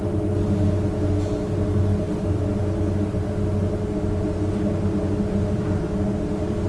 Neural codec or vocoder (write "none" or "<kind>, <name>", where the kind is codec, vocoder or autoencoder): none